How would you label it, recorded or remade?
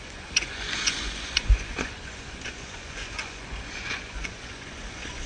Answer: remade